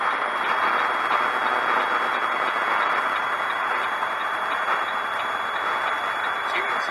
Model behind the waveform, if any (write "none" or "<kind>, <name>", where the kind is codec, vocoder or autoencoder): none